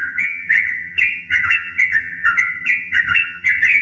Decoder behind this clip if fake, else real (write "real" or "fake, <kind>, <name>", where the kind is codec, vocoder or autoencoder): fake, vocoder, HiFi-GAN